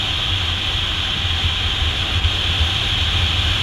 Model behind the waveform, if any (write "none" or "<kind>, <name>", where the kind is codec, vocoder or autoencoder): none